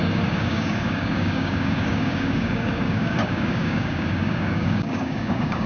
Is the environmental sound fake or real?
fake